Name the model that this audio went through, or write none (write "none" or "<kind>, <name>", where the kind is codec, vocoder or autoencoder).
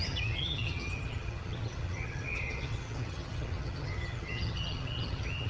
vocoder, HiFi-GAN